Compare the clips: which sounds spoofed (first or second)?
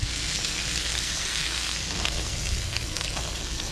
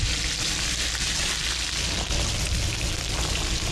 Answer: first